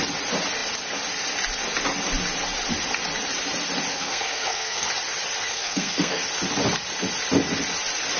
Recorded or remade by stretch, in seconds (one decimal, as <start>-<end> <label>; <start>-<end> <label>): 0.0-3.9 recorded; 3.9-4.9 remade; 4.9-5.5 recorded; 5.5-6.2 remade; 6.2-8.2 recorded